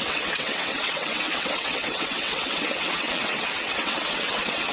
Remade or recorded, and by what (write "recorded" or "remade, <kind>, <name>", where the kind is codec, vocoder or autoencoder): remade, vocoder, WaveNeXt